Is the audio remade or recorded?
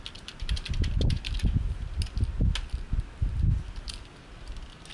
recorded